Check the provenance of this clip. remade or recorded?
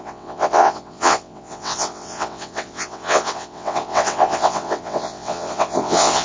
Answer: remade